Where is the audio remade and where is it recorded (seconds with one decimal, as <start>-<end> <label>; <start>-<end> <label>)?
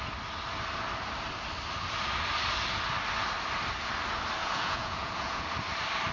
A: 0.0-4.4 recorded; 4.4-5.5 remade; 5.5-6.1 recorded